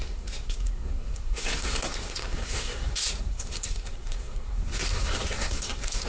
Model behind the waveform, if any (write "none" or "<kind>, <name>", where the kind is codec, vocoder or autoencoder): codec, SNAC